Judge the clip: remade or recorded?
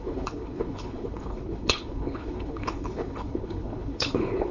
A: remade